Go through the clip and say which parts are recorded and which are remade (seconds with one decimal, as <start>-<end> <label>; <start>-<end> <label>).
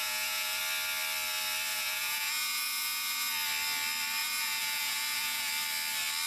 0.0-0.6 remade; 0.6-1.7 recorded; 1.7-3.3 remade; 3.3-4.2 recorded; 4.2-5.5 remade; 5.5-6.3 recorded